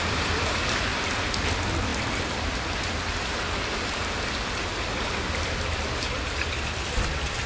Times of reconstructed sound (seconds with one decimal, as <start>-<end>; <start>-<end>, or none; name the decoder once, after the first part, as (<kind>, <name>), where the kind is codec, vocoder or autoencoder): 0.0-0.9 (vocoder, BigVGAN v2); 1.5-1.9; 5.3-7.5